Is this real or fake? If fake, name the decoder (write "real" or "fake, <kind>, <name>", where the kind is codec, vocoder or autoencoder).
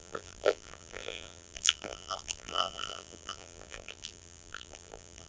fake, vocoder, BigVGAN v2